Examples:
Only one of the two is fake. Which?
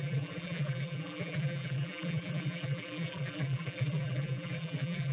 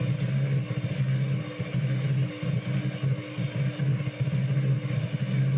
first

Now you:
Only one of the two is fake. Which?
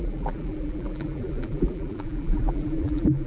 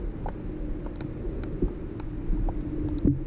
first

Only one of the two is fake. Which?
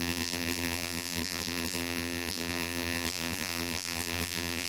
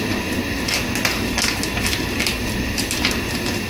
first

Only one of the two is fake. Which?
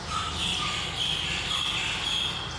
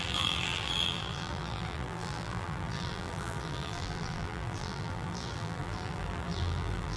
second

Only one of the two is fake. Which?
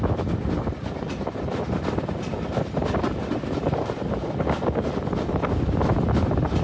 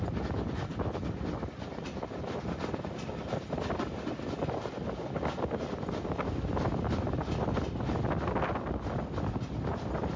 first